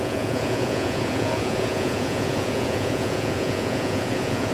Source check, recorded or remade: remade